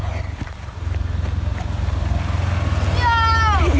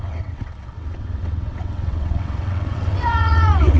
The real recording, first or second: first